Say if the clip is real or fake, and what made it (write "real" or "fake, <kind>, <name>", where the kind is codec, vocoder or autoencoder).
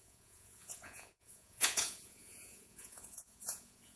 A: fake, vocoder, Vocos